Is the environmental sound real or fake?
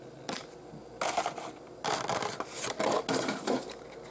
real